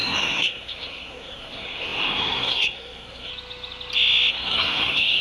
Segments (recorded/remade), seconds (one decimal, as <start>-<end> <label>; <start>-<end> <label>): 0.0-3.3 remade; 3.3-4.3 recorded; 4.3-5.2 remade